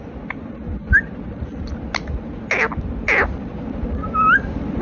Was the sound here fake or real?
real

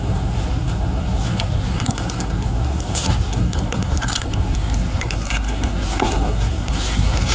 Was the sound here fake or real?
fake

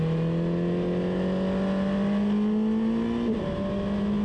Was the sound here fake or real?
real